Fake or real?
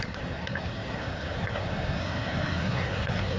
fake